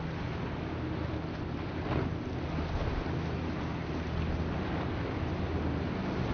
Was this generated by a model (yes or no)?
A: no